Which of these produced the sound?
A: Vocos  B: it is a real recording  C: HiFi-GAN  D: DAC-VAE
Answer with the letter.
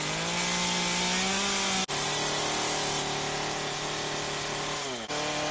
B